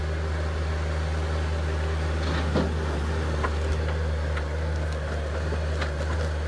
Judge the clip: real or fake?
real